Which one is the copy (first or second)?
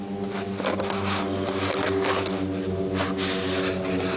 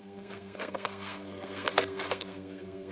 second